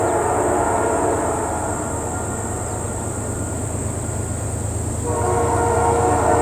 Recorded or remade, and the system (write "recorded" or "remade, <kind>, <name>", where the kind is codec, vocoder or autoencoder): recorded